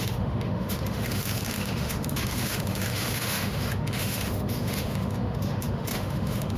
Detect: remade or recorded remade